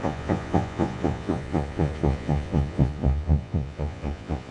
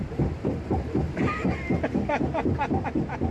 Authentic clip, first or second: second